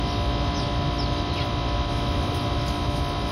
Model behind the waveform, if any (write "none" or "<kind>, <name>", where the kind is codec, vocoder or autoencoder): none